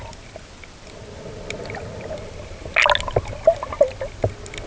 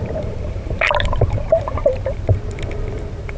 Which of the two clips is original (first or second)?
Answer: first